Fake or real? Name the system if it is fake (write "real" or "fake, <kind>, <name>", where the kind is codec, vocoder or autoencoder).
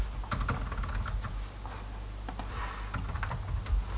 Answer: real